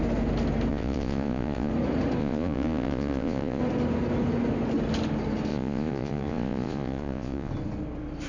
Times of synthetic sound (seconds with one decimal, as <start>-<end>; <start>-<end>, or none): 0.7-1.7; 2.2-3.6; 5.5-7.5